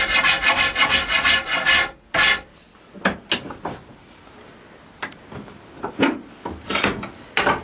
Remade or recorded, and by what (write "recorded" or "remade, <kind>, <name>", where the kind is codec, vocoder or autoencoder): recorded